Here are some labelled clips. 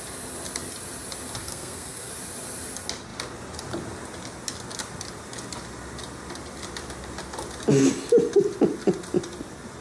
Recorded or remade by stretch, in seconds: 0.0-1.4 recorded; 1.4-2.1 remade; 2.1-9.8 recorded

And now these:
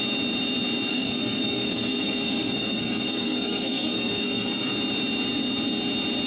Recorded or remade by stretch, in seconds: 0.0-0.9 recorded; 0.9-4.7 remade; 4.7-6.3 recorded